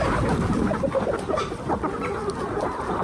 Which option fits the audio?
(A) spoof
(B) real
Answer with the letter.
A